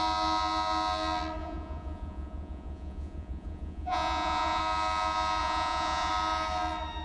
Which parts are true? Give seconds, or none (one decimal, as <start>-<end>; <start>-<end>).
0.0-1.4; 4.6-5.4; 6.1-7.0